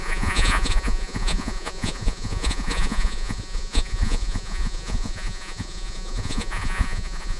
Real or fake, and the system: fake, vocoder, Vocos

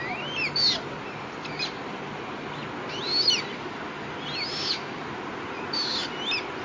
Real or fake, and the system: real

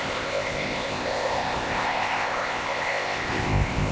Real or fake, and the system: fake, codec, ZipCodec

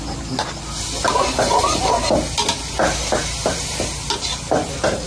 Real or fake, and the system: real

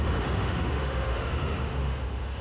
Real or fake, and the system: fake, autoencoder, DAC-VAE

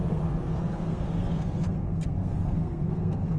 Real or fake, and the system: fake, codec, SNAC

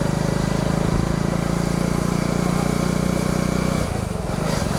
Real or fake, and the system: real